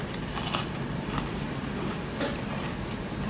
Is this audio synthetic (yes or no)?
no